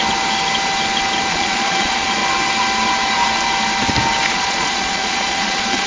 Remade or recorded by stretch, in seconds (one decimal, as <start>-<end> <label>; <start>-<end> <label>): 0.0-1.3 recorded; 1.3-2.2 remade; 2.2-4.3 recorded; 4.3-5.9 remade